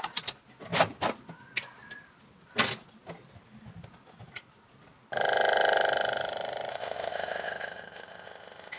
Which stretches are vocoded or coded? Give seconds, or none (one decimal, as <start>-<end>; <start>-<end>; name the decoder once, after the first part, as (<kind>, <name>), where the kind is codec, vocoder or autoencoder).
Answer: 6.7-8.8 (codec, ZipCodec)

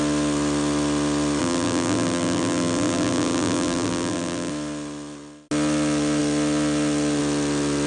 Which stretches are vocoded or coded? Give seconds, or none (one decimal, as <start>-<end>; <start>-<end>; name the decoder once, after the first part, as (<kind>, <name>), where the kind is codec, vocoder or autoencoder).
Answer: 1.4-4.5 (vocoder, BigVGAN v2)